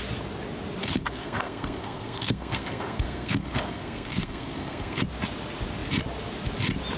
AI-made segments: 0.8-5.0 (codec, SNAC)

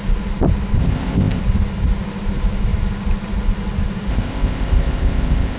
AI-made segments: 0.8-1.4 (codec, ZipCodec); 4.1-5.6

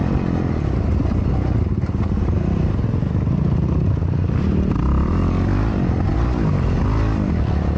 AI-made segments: none